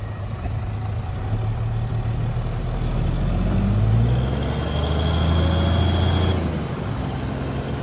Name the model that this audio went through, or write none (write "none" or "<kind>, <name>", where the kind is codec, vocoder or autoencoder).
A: none